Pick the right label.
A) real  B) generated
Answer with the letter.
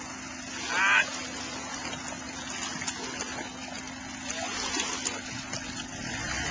A